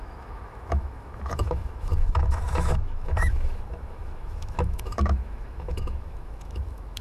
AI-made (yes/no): yes